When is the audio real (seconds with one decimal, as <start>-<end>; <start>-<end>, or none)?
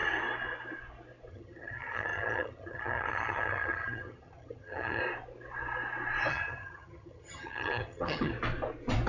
0.0-1.3; 5.0-6.3; 8.3-9.1